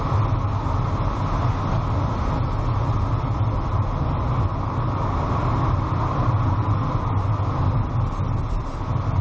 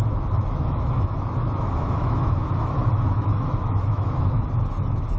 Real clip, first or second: first